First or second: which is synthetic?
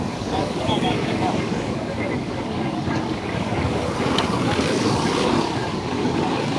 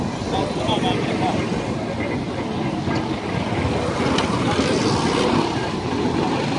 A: first